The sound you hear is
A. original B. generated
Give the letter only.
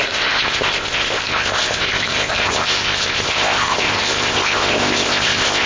B